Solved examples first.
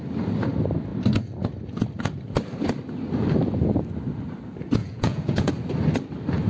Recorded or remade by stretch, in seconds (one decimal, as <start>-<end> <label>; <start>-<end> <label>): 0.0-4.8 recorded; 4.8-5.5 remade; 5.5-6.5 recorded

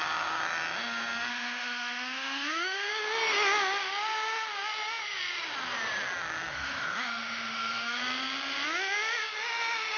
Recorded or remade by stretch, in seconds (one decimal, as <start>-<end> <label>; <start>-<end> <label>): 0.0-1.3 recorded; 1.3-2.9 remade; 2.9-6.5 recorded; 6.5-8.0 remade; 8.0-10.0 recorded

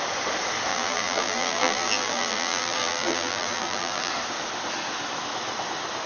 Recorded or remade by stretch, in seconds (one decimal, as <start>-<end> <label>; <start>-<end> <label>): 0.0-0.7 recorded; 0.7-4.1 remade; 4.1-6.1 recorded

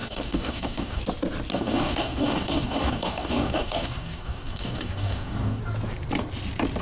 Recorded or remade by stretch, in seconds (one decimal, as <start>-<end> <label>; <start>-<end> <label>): 0.0-1.0 remade; 1.0-1.5 recorded; 1.5-5.6 remade; 5.6-6.8 recorded

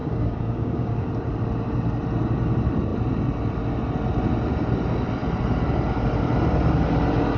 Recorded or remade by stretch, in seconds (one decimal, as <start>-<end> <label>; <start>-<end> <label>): 0.0-1.1 remade; 1.1-7.4 recorded